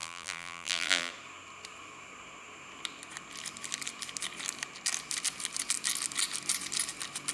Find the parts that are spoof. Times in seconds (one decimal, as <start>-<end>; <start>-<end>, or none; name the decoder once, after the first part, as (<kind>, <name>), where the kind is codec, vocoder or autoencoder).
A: 0.0-1.1 (vocoder, BigVGAN v2)